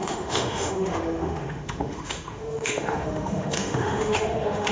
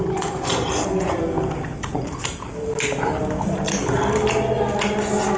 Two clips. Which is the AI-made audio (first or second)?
first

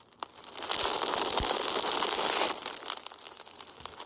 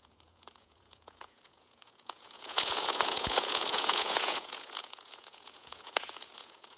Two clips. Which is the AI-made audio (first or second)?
second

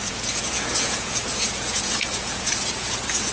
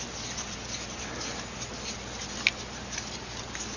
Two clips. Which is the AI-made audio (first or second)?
first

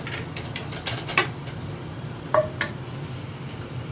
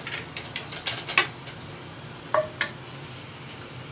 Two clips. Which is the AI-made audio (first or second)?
first